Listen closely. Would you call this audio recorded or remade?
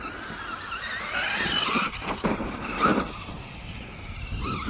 recorded